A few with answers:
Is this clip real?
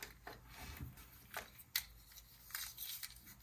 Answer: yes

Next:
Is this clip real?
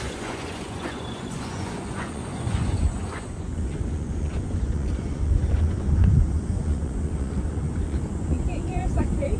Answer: no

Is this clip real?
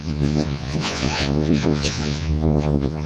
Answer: no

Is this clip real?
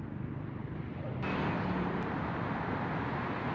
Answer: yes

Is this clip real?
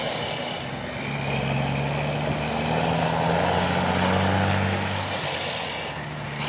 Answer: yes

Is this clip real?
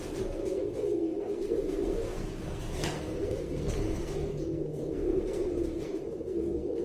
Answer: no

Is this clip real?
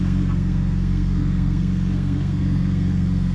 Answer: no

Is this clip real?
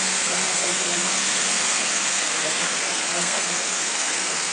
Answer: no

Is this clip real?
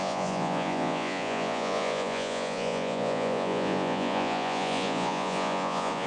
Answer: no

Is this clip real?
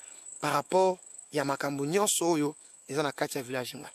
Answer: no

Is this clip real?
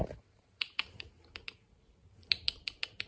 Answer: yes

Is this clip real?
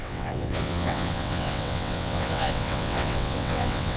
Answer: no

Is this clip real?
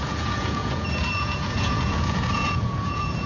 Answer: no